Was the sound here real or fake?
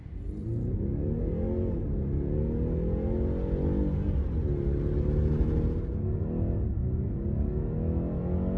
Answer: real